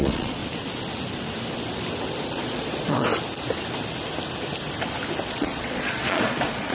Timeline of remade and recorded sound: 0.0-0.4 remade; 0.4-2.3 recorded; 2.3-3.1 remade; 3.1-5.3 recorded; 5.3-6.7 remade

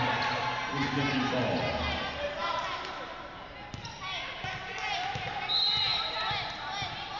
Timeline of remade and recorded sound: 0.0-7.2 recorded

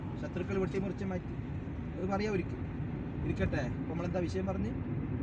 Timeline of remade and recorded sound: 0.0-5.2 recorded

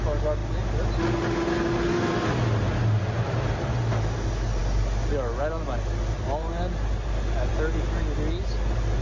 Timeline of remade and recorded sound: 0.0-9.0 recorded

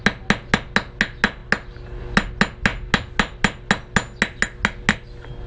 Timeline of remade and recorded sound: 0.0-5.5 recorded

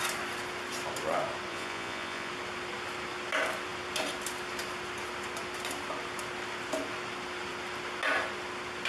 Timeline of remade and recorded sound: 0.0-1.5 recorded; 1.5-2.3 remade; 2.3-8.9 recorded

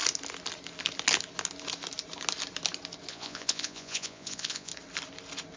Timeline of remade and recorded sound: 0.0-3.1 recorded; 3.1-4.7 remade; 4.7-5.6 recorded

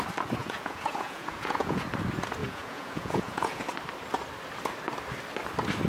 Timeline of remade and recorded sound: 0.0-0.4 recorded; 0.4-1.9 remade; 1.9-2.4 recorded; 2.4-3.7 remade; 3.7-5.9 recorded